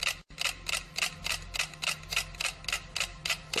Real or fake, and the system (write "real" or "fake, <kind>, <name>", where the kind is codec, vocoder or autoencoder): real